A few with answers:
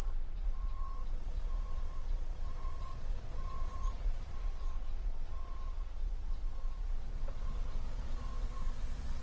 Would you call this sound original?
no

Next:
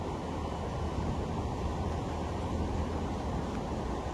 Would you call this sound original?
yes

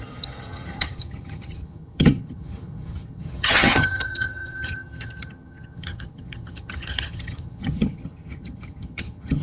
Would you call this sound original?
no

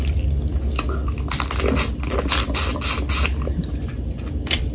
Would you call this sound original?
yes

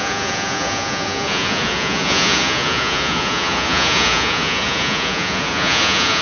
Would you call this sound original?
no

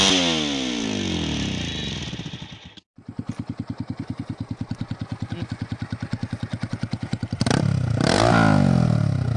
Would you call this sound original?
yes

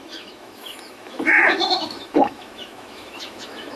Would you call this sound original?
no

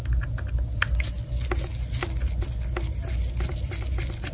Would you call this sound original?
yes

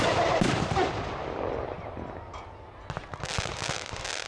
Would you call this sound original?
yes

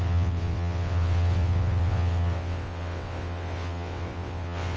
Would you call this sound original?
no